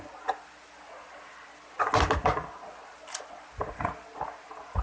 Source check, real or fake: real